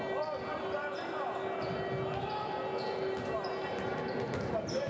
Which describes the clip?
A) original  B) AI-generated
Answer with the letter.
A